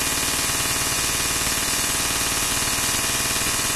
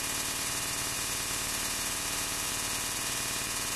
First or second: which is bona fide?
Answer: second